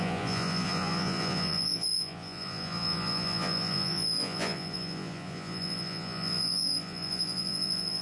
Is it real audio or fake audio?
fake